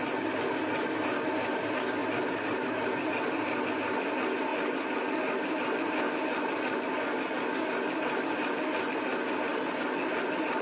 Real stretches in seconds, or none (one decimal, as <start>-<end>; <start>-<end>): 0.0-2.0; 2.7-9.5